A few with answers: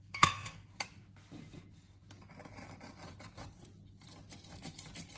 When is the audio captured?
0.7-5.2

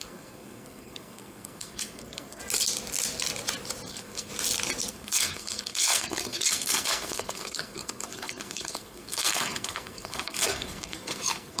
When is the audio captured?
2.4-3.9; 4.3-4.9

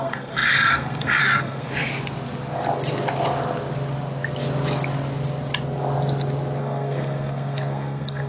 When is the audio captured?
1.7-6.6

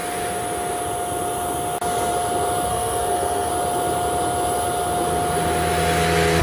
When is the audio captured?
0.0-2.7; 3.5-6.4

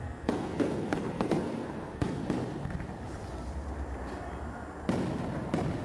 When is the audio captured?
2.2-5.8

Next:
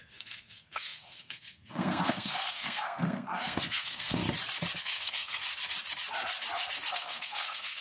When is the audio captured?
4.2-4.8; 5.4-6.9

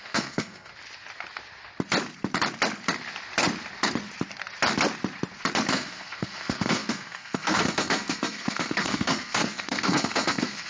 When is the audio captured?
0.7-5.7

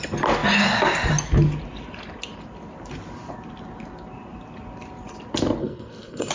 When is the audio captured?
0.0-5.6